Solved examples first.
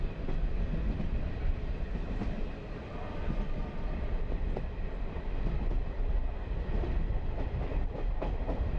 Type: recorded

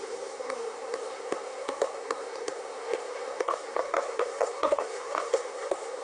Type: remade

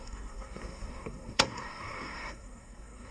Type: remade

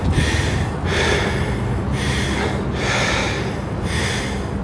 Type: recorded